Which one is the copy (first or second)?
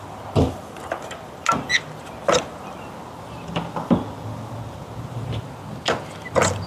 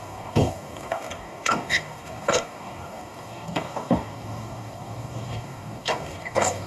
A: second